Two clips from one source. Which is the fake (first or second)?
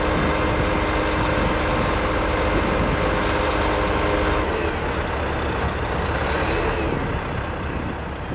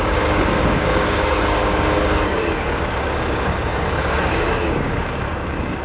second